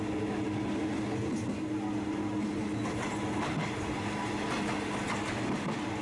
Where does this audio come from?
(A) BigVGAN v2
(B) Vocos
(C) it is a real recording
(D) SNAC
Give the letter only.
C